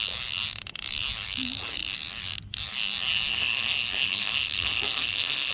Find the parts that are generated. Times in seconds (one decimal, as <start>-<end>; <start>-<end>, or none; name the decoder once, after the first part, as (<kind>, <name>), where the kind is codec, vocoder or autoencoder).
3.3-5.5 (codec, SNAC)